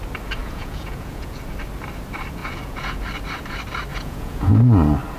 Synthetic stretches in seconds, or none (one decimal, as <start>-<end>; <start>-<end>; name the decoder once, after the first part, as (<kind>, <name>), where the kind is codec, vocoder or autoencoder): 0.4-1.4 (vocoder, Vocos); 2.4-3.0; 3.9-4.5